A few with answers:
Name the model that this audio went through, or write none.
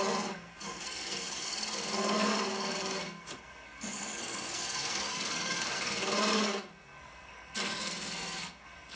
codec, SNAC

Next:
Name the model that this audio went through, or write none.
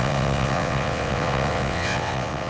vocoder, WaveNeXt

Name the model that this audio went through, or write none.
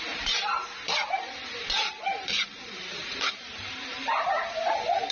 vocoder, BigVGAN v2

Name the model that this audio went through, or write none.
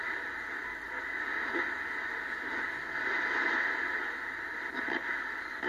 none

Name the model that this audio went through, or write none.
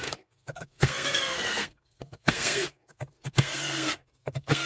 codec, SNAC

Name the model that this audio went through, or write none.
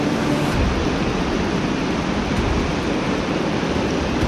none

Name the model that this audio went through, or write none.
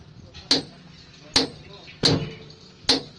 none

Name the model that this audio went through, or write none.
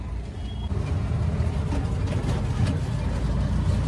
none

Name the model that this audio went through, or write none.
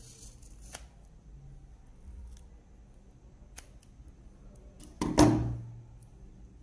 none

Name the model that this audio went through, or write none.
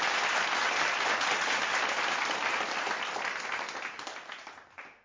none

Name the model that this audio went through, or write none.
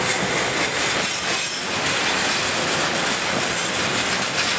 none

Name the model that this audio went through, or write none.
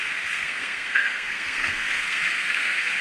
codec, SNAC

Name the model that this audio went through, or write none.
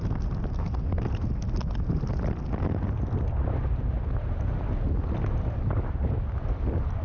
none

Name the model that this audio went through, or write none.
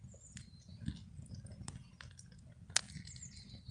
none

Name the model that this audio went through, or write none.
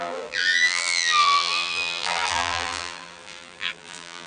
vocoder, BigVGAN v2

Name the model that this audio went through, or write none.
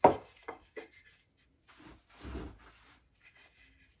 none